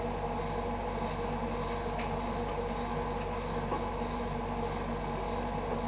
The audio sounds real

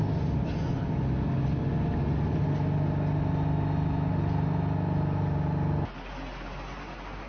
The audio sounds real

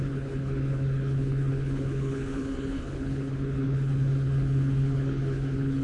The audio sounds fake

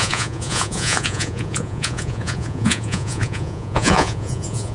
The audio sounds fake